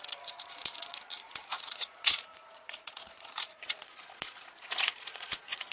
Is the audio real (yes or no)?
no